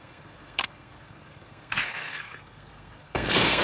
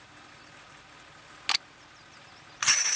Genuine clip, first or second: second